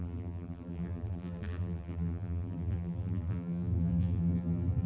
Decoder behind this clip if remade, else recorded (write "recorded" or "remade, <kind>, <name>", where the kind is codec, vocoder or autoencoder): remade, vocoder, BigVGAN v2